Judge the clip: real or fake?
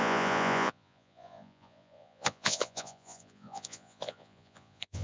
fake